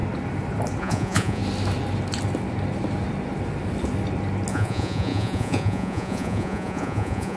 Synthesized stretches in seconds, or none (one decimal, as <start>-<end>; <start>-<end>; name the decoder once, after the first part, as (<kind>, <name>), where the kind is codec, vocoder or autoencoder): 0.8-1.4 (vocoder, Vocos); 4.5-7.4